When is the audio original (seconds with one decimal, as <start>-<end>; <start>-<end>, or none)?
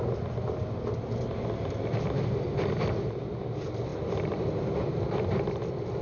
0.0-6.0